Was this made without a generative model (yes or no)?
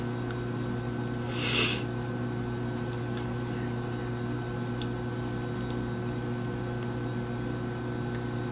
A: yes